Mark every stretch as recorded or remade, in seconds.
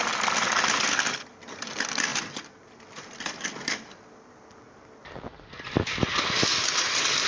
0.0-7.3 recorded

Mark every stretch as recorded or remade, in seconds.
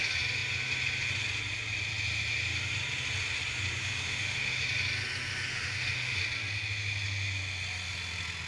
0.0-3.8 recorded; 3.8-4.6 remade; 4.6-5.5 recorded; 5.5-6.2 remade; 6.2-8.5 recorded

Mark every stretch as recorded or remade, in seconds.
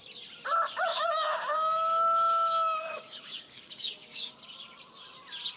0.0-0.9 recorded; 0.9-4.3 remade; 4.3-5.6 recorded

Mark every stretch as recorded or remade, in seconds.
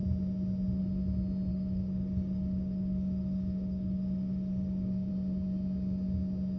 0.0-1.5 recorded; 1.5-5.1 remade; 5.1-6.6 recorded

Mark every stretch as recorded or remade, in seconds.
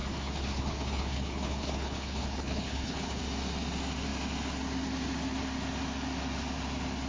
0.0-3.2 remade; 3.2-7.1 recorded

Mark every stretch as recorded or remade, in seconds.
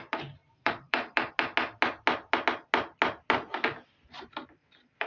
0.0-0.4 recorded; 0.4-1.3 remade; 1.3-5.1 recorded